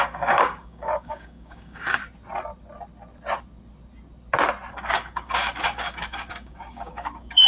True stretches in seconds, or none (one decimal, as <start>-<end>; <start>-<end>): 2.0-4.7